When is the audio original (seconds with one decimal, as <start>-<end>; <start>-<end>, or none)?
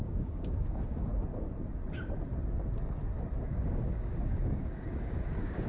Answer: 1.1-3.4